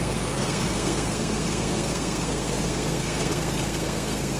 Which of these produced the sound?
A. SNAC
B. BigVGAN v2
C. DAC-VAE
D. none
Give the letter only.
A